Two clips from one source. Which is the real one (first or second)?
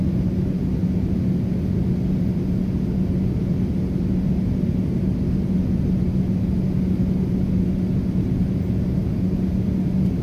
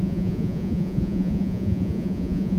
first